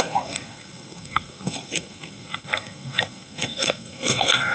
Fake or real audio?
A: fake